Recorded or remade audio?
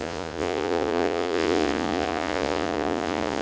remade